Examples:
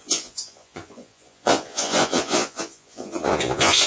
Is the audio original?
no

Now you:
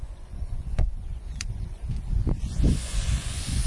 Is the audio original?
no